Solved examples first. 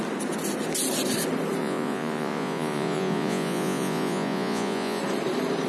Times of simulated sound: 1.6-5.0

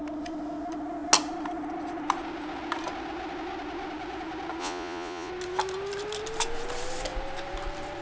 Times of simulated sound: 4.6-5.3

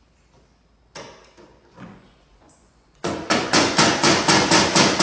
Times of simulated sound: 1.5-4.5

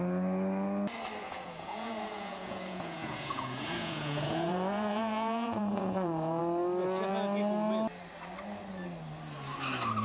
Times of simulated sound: 1.2-6.4

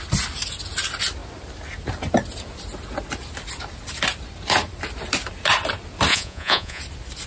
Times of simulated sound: 6.1-6.8

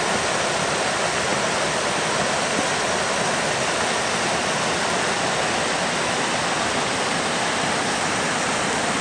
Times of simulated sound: none

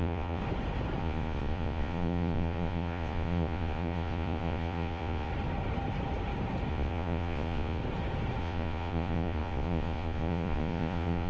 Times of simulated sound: 0.0-0.4; 1.0-5.3; 6.7-7.8; 8.4-11.3